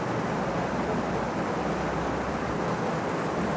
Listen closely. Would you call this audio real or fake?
real